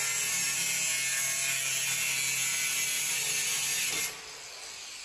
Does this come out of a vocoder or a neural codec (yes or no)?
no